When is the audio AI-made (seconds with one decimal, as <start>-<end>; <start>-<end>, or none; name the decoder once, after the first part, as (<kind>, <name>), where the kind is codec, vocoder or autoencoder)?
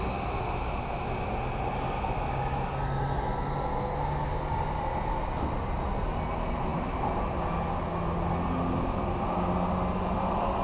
none